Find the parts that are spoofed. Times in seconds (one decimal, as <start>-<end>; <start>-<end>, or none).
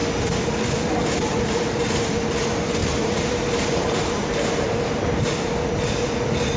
2.8-5.2